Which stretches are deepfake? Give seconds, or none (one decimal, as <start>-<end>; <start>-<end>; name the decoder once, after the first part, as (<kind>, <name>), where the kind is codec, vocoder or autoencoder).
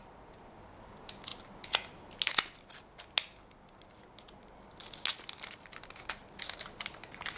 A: none